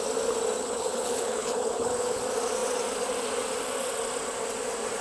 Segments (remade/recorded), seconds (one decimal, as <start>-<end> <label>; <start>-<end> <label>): 0.0-0.6 recorded; 0.6-2.2 remade; 2.2-5.0 recorded